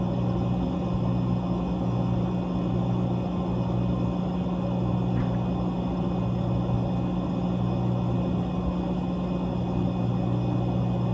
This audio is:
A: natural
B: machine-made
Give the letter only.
A